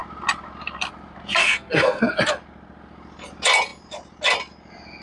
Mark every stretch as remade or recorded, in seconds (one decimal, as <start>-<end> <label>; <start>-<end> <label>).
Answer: 0.0-1.4 recorded; 1.4-2.0 remade; 2.0-5.0 recorded